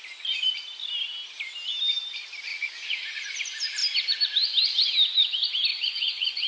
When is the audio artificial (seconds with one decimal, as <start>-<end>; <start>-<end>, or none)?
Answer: 2.5-3.4; 5.7-6.5